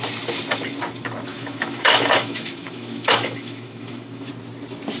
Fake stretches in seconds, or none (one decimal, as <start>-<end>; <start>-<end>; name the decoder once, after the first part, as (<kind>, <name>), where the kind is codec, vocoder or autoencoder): 1.3-4.3 (autoencoder, DAC-VAE)